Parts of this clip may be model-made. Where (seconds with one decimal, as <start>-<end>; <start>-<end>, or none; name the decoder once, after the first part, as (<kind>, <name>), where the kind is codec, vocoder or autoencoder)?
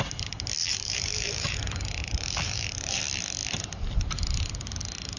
0.6-1.6 (vocoder, BigVGAN v2); 2.0-3.0